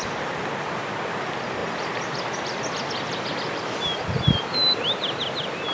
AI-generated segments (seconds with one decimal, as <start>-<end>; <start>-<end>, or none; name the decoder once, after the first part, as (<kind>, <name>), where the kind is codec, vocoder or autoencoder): none